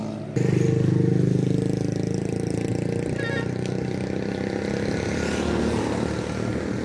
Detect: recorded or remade recorded